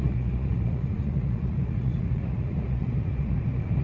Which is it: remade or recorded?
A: remade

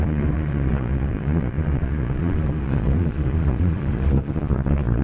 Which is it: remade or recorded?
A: remade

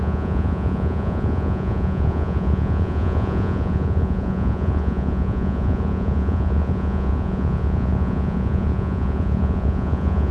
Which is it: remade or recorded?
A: remade